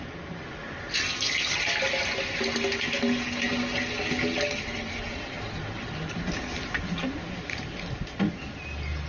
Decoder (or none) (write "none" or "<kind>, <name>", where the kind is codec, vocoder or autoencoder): none